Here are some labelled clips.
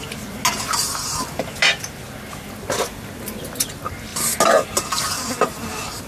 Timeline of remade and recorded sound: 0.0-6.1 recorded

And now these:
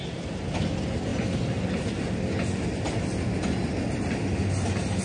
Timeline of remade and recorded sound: 0.0-5.0 recorded

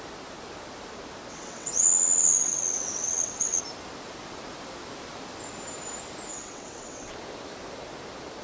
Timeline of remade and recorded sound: 0.0-1.3 recorded; 1.3-3.6 remade; 3.6-6.3 recorded; 6.3-7.1 remade; 7.1-8.4 recorded

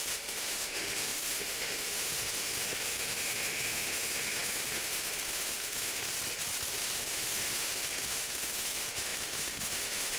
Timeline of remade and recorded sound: 0.0-6.1 remade; 6.1-6.7 recorded; 6.7-10.2 remade

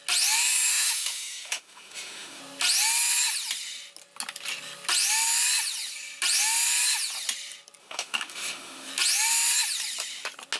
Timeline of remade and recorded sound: 0.0-0.7 recorded; 0.7-2.4 remade; 2.4-7.8 recorded; 7.8-8.9 remade; 8.9-10.6 recorded